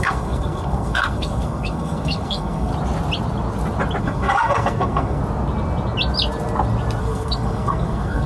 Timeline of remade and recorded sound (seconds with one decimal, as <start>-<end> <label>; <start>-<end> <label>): 0.0-2.7 remade; 2.7-4.0 recorded; 4.0-5.2 remade; 5.2-7.0 recorded; 7.0-8.3 remade